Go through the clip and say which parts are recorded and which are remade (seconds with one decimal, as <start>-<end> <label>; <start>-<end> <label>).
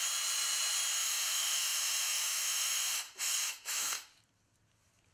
0.0-1.0 recorded; 1.0-4.1 remade; 4.1-5.1 recorded